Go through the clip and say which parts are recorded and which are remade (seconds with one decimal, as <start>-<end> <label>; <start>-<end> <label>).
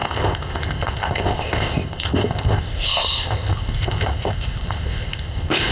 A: 0.0-5.7 remade